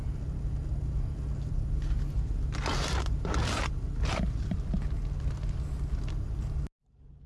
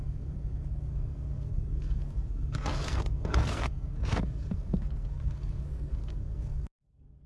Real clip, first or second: first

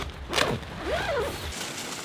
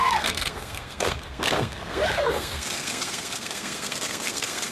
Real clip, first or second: first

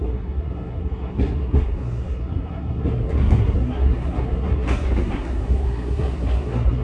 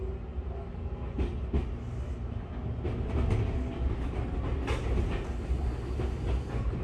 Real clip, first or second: second